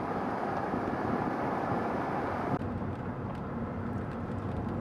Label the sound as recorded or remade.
remade